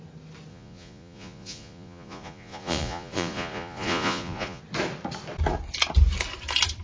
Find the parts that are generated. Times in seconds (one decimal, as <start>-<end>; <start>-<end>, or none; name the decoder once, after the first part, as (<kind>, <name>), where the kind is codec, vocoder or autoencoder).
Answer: 0.5-4.6 (vocoder, Vocos)